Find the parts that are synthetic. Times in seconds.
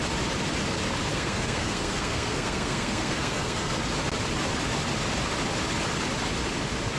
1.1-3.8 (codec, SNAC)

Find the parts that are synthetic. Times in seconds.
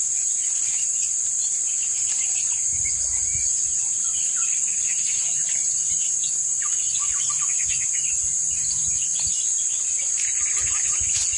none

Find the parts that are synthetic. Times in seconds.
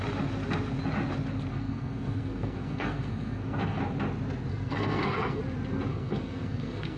1.5-3.8 (codec, SNAC); 4.5-5.4; 5.9-7.0